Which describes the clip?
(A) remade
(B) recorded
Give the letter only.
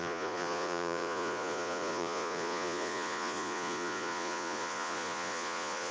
A